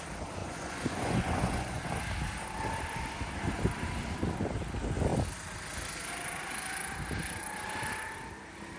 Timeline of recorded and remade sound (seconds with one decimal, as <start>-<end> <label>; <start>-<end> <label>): 0.0-0.4 recorded; 0.4-1.9 remade; 1.9-8.8 recorded

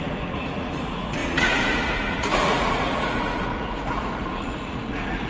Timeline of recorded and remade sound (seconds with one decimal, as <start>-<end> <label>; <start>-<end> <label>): 0.0-5.3 remade

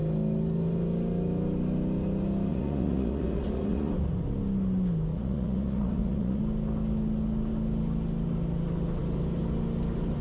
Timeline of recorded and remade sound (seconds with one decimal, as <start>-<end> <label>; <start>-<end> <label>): 0.0-2.5 recorded; 2.5-3.9 remade; 3.9-5.1 recorded; 5.1-6.4 remade; 6.4-10.2 recorded

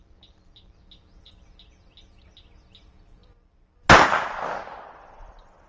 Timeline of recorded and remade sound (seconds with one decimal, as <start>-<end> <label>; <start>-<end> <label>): 0.0-5.7 recorded

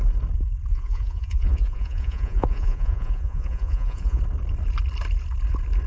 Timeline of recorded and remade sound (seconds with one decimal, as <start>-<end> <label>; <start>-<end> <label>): 0.0-0.7 recorded; 0.7-4.2 remade; 4.2-5.9 recorded